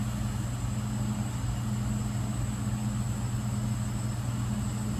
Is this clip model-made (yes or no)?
no